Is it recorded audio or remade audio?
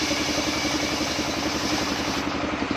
recorded